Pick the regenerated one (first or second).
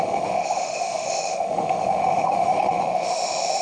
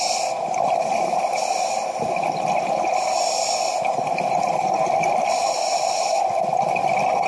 first